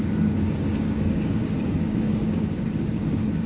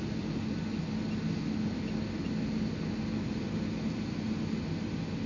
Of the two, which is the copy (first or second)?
first